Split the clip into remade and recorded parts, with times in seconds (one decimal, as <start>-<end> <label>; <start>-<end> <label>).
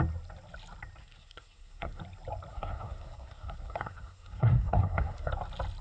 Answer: 0.0-1.0 recorded; 1.0-2.0 remade; 2.0-2.5 recorded; 2.5-5.3 remade; 5.3-5.8 recorded